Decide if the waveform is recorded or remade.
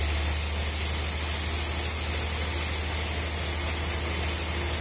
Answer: recorded